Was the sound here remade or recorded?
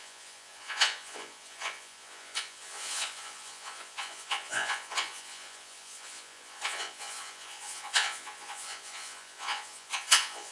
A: remade